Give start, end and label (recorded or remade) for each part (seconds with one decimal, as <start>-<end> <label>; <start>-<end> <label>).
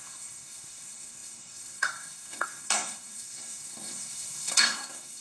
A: 0.0-5.2 remade